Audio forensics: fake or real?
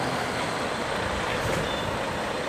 real